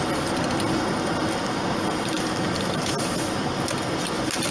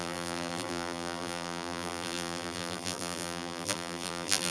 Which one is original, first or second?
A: first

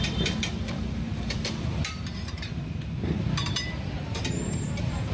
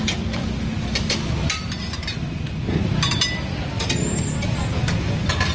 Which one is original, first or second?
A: second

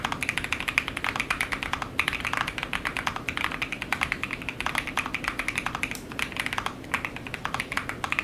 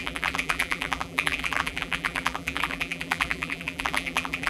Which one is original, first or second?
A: first